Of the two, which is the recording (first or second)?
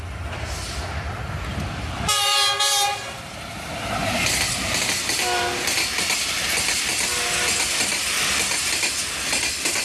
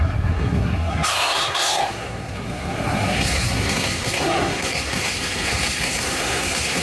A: first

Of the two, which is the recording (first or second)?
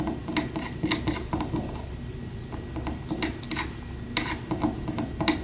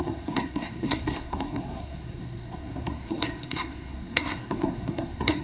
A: first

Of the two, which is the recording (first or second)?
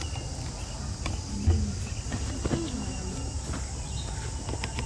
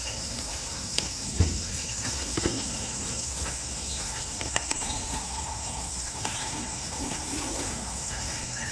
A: first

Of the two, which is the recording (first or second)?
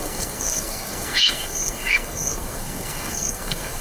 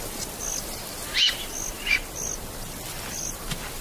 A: second